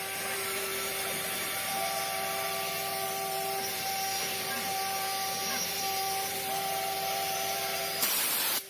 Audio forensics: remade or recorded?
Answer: remade